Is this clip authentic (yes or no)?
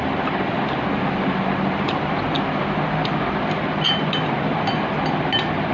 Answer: yes